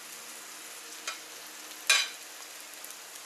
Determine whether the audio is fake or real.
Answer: real